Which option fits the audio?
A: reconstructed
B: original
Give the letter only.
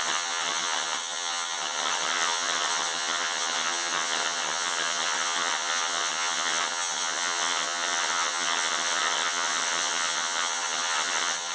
A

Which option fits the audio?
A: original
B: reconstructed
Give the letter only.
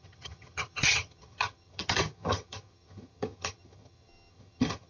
B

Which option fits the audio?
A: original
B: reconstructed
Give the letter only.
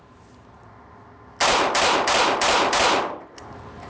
A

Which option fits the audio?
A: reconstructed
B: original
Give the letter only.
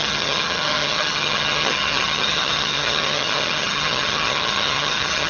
A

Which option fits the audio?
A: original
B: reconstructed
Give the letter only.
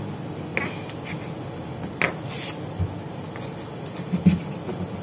A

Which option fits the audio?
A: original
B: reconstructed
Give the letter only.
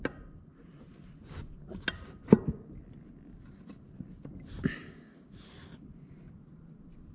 A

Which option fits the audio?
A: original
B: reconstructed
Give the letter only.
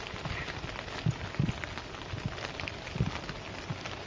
A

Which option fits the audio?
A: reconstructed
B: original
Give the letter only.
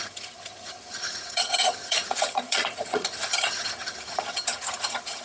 A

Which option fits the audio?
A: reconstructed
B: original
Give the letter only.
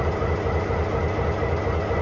B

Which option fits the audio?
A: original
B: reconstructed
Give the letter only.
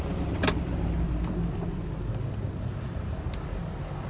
A